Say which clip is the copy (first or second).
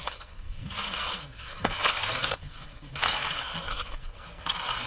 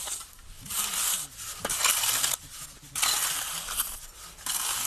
first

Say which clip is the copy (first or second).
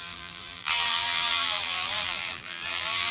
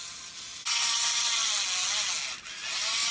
first